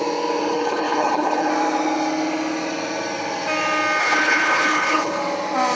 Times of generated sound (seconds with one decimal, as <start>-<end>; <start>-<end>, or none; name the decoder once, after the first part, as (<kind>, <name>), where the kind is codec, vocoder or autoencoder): 0.5-1.5 (codec, HILCodec); 4.0-5.2